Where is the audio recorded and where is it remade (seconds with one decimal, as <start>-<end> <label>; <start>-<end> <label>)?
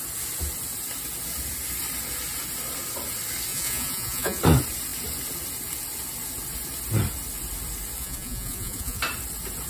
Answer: 0.0-3.5 recorded; 3.5-4.4 remade; 4.4-8.0 recorded; 8.0-9.0 remade; 9.0-9.7 recorded